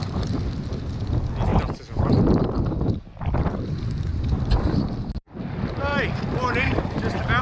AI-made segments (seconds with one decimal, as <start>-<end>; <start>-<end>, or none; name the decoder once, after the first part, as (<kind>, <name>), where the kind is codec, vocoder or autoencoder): none